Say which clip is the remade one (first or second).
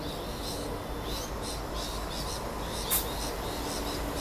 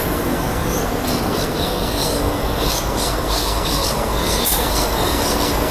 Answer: second